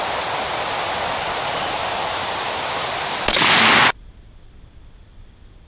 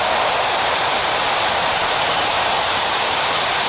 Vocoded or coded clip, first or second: second